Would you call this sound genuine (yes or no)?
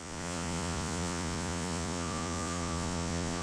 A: no